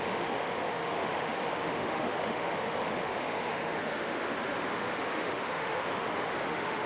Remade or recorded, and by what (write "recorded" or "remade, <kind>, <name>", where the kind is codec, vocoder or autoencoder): remade, autoencoder, DAC-VAE